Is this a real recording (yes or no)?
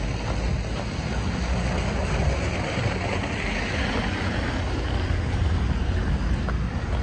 yes